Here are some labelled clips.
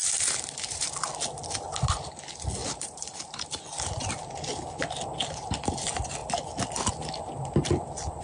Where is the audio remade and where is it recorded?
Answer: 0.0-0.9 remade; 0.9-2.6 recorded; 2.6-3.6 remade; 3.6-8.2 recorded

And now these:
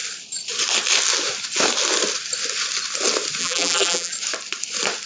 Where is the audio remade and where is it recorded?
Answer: 0.0-3.4 recorded; 3.4-4.1 remade; 4.1-5.1 recorded

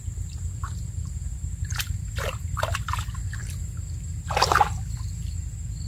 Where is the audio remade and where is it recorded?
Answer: 0.0-1.7 recorded; 1.7-2.4 remade; 2.4-5.9 recorded